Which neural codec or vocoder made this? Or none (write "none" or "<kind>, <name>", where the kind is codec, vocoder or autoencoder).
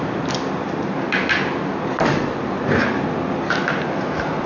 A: none